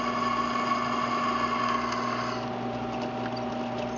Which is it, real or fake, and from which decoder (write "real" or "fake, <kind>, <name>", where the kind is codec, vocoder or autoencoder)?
real